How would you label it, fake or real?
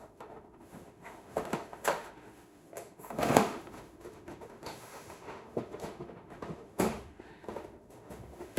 fake